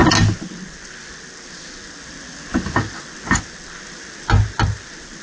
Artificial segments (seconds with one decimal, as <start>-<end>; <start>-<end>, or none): none